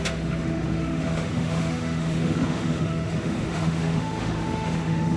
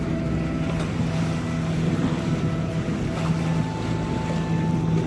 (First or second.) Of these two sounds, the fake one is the first